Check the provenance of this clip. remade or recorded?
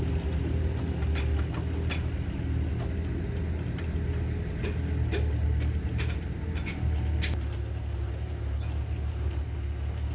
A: recorded